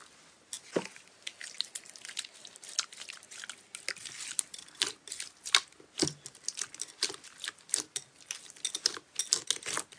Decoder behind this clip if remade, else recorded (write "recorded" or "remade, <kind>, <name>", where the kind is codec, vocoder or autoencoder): recorded